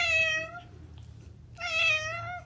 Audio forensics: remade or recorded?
recorded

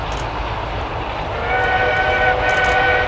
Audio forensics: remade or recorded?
recorded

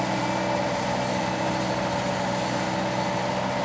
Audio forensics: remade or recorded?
recorded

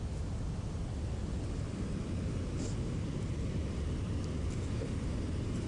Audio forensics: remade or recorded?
recorded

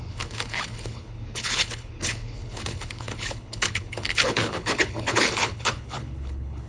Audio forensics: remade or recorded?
remade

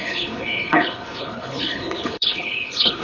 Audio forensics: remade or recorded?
remade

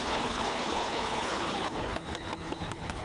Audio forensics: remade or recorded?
remade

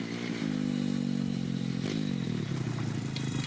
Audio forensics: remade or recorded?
recorded